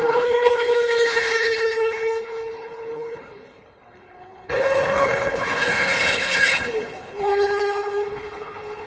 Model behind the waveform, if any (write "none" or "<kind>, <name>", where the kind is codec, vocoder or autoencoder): codec, HILCodec